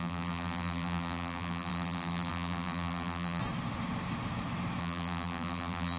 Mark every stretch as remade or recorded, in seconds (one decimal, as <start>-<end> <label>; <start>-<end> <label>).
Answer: 0.0-3.4 remade; 3.4-4.8 recorded; 4.8-6.0 remade